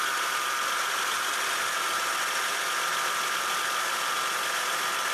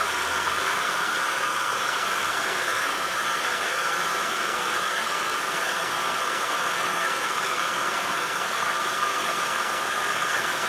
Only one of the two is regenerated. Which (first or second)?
second